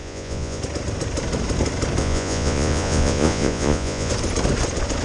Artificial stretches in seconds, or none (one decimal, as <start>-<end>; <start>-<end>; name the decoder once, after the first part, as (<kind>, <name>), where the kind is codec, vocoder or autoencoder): 0.0-0.6 (vocoder, Vocos); 2.0-4.1